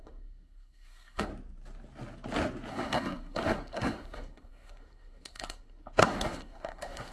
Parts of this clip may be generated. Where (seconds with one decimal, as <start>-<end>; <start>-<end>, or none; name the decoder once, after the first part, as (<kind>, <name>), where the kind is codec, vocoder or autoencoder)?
0.0-1.3 (codec, SNAC); 2.7-7.1